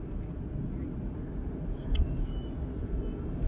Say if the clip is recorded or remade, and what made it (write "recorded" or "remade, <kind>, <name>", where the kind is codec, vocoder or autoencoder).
recorded